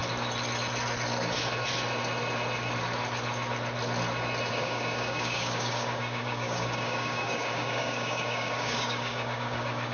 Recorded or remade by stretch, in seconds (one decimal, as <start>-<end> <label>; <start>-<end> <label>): 0.0-4.5 recorded; 4.5-9.9 remade